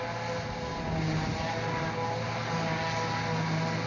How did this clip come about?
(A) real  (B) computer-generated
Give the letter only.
A